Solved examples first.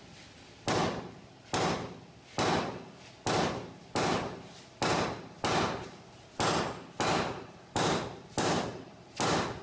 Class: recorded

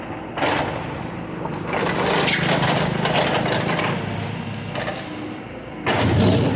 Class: recorded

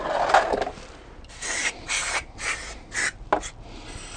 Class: recorded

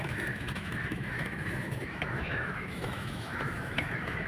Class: remade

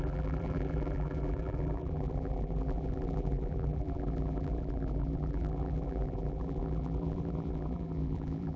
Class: remade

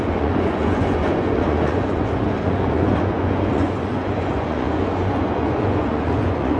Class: remade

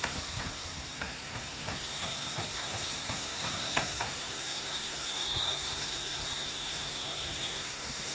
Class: remade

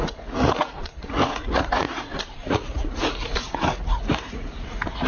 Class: remade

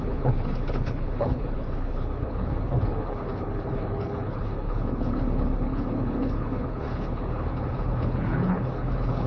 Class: remade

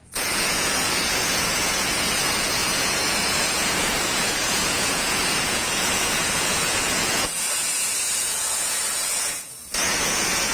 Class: remade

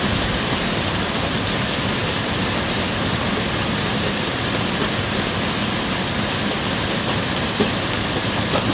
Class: recorded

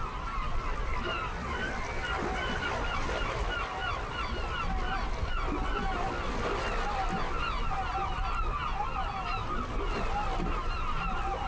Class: recorded